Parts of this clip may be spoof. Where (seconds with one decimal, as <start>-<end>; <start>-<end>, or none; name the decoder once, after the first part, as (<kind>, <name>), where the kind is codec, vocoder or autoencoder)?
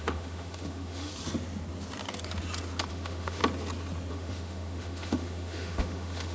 0.0-1.1 (autoencoder, DAC-VAE); 2.9-3.4; 4.1-6.3